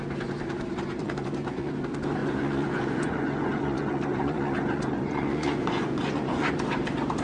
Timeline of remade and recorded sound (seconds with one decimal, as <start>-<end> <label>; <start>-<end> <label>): 0.0-1.0 recorded; 1.0-1.7 remade; 1.7-2.2 recorded; 2.2-6.5 remade; 6.5-7.2 recorded